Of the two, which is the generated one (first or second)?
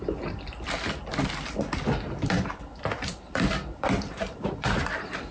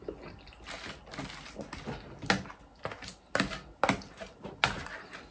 first